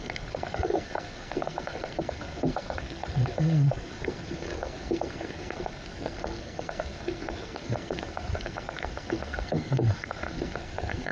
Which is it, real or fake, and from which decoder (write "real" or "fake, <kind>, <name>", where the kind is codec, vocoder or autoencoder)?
fake, codec, SNAC